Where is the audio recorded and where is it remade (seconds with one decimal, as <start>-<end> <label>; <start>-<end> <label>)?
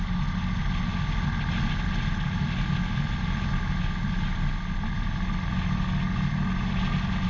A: 0.0-7.3 recorded